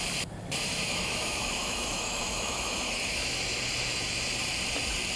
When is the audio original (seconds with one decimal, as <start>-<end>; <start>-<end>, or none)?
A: 0.0-0.7; 3.4-5.2